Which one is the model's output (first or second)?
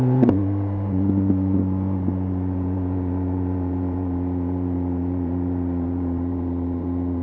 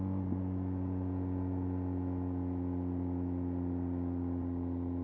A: first